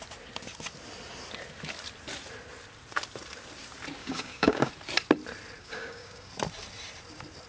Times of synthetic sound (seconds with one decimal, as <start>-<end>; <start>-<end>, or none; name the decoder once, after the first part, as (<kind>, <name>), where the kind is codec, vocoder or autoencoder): 4.0-4.7 (codec, DAC); 5.6-6.3